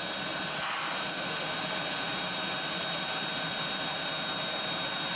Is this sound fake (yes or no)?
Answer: no